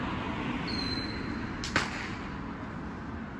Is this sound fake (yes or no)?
no